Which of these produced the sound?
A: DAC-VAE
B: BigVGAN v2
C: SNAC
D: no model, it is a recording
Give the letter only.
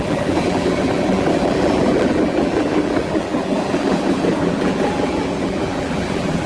B